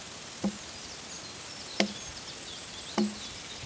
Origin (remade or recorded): recorded